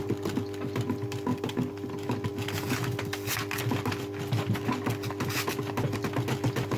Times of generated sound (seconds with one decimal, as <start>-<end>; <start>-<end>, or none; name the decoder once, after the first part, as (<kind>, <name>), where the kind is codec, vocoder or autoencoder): 1.3-1.9 (vocoder, BigVGAN v2)